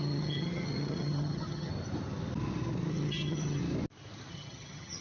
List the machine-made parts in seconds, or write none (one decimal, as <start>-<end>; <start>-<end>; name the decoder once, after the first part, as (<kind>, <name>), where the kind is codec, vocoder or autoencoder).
0.0-1.7 (vocoder, HiFi-GAN); 2.9-3.6; 4.3-5.0

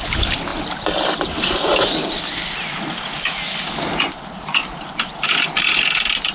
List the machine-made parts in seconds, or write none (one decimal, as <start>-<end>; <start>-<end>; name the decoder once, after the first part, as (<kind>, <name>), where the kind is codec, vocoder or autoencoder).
none

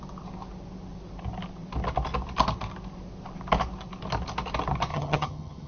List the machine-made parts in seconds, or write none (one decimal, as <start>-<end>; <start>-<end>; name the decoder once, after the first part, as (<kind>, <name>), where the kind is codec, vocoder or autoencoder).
4.9-5.7 (vocoder, HiFi-GAN)

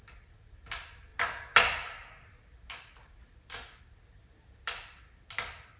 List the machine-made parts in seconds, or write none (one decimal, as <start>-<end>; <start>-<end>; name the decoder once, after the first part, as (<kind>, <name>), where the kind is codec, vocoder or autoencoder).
none

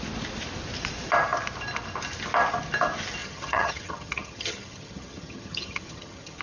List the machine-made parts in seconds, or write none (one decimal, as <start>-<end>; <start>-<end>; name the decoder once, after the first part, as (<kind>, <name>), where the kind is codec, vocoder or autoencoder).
3.2-6.4 (vocoder, HiFi-GAN)

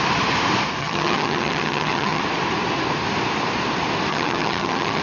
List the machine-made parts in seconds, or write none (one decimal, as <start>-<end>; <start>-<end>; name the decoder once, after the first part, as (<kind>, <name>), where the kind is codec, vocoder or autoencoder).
0.8-2.2 (vocoder, HiFi-GAN); 4.1-5.0

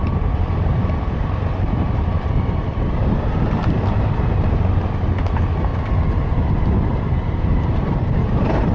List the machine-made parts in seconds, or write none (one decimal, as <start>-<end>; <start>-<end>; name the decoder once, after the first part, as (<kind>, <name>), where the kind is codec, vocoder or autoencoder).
none